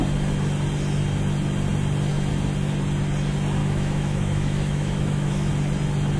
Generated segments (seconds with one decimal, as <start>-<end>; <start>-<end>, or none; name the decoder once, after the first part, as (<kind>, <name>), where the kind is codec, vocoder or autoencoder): 3.6-5.5 (autoencoder, DAC-VAE)